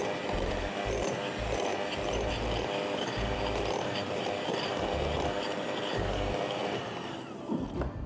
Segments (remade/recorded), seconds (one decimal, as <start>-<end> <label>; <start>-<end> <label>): 0.0-8.1 recorded